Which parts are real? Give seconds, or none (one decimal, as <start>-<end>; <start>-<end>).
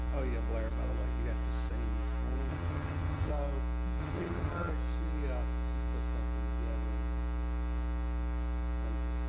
0.0-2.5; 3.3-4.0; 4.7-9.3